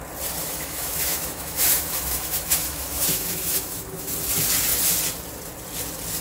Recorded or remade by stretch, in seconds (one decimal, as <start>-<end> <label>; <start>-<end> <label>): 0.0-0.4 recorded; 0.4-4.1 remade; 4.1-6.2 recorded